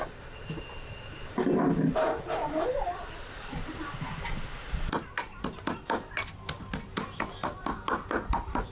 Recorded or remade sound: recorded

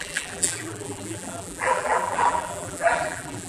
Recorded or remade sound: remade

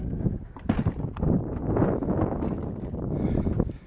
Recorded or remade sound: recorded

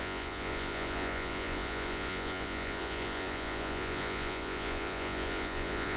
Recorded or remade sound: remade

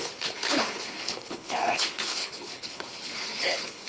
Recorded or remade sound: remade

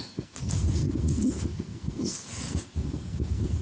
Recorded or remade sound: remade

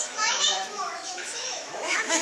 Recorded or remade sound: remade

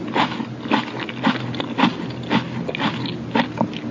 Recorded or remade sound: recorded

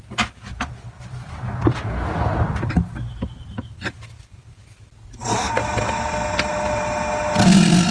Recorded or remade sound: recorded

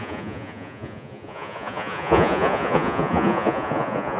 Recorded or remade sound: remade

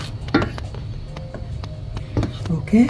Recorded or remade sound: recorded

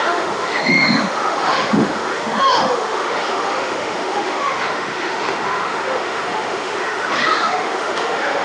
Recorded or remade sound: remade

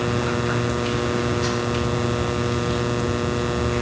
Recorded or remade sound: recorded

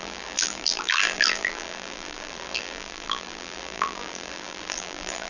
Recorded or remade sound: remade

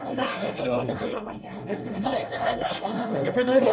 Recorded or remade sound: remade